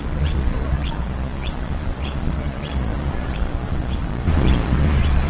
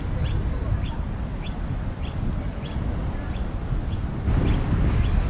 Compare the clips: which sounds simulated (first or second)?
first